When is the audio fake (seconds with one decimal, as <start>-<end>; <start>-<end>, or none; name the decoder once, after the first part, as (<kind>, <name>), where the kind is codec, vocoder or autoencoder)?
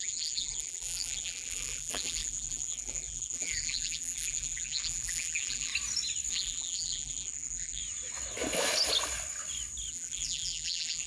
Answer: 0.0-5.7 (vocoder, BigVGAN v2); 6.3-7.8; 9.9-11.1